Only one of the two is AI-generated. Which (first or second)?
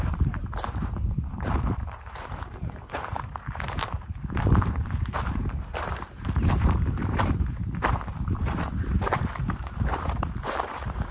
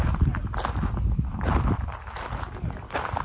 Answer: first